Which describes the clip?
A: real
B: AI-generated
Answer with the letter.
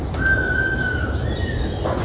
A